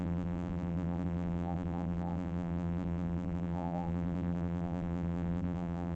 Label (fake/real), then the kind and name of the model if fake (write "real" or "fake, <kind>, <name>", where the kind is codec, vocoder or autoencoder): fake, vocoder, BigVGAN v2